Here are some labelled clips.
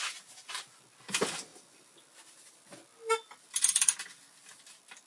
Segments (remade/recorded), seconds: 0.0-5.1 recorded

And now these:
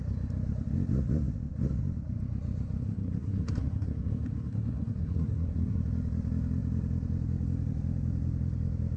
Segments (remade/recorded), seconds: 0.0-2.8 recorded; 2.8-5.8 remade; 5.8-9.0 recorded

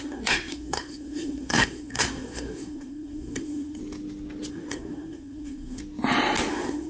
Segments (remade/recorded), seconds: 0.0-3.8 remade; 3.8-4.5 recorded; 4.5-5.8 remade; 5.8-6.5 recorded; 6.5-6.9 remade

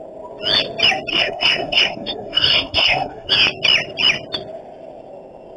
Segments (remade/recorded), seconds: 0.0-1.1 recorded; 1.1-3.3 remade; 3.3-5.6 recorded

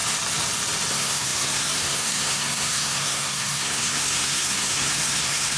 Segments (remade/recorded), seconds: 0.0-0.9 recorded; 0.9-5.6 remade

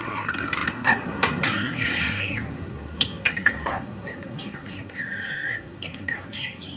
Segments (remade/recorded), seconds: 0.0-6.8 remade